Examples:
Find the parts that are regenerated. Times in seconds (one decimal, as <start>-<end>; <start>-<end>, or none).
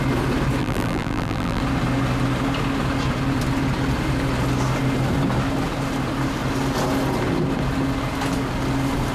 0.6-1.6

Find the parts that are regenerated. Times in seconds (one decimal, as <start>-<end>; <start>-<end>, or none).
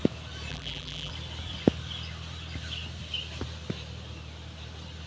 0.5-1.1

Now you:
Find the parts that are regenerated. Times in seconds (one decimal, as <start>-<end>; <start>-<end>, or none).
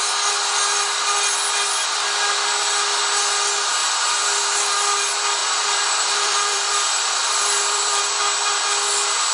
5.4-8.0